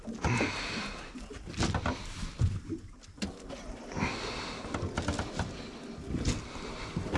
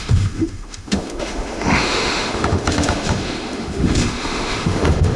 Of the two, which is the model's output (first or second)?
second